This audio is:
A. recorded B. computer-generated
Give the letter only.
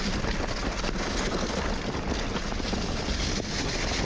A